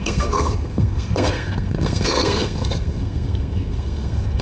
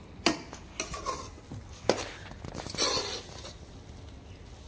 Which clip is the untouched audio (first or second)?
second